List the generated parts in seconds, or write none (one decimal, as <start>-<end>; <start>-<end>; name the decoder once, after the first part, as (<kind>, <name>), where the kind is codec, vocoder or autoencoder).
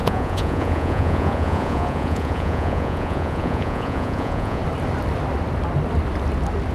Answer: 0.0-4.6 (vocoder, Vocos)